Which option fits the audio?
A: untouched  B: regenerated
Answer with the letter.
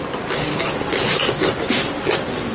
A